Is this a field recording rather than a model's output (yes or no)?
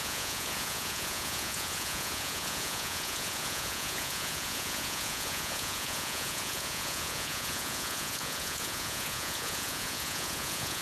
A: no